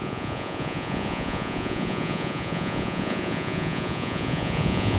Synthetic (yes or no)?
yes